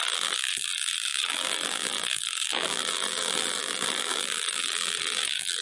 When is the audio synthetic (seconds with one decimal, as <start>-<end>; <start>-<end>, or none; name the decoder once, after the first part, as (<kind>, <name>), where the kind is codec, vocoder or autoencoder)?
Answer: 0.0-5.6 (vocoder, BigVGAN v2)